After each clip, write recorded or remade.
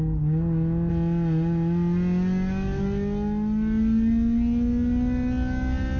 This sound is recorded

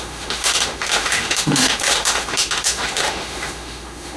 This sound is remade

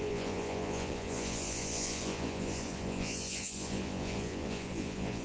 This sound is remade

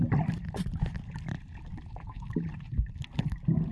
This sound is recorded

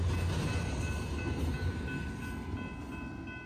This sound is recorded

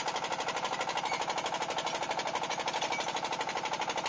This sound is recorded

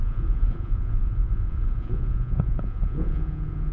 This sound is remade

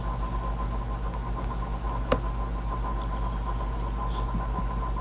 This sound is recorded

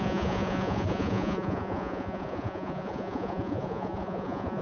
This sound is remade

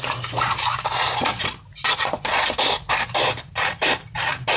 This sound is remade